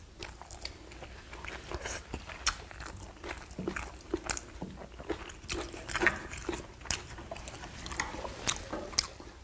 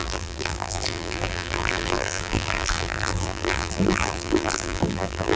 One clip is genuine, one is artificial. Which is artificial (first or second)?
second